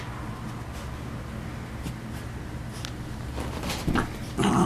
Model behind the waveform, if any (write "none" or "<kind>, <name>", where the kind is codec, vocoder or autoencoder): none